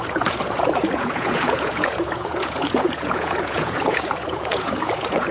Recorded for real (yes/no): no